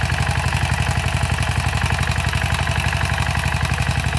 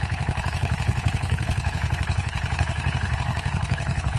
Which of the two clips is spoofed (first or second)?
second